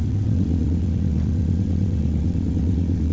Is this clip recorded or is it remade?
remade